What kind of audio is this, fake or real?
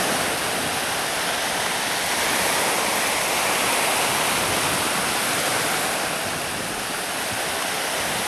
real